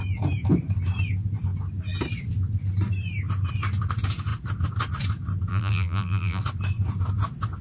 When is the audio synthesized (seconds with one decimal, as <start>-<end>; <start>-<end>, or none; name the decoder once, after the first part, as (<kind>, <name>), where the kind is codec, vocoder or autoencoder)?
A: 5.5-6.4 (vocoder, BigVGAN v2)